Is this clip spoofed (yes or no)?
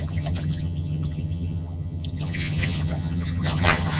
yes